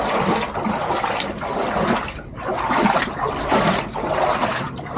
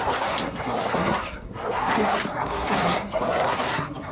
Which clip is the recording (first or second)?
first